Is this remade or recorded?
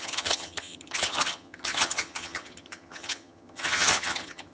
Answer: remade